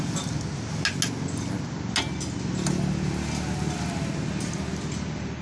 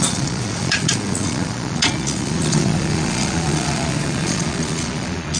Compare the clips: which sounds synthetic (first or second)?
second